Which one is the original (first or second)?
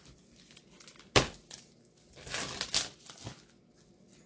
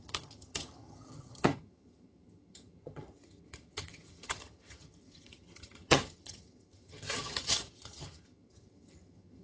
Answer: first